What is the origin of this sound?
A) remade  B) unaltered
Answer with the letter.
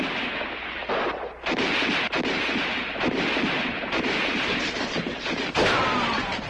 A